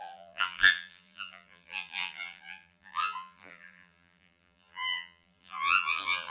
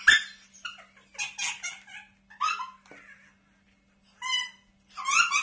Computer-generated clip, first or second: first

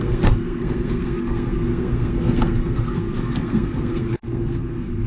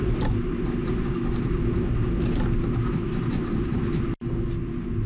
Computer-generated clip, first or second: first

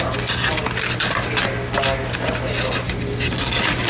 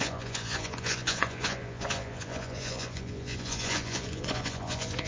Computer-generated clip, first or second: second